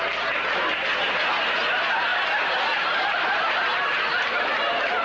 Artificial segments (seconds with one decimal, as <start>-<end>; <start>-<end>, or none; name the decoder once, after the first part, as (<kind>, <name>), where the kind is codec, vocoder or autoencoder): none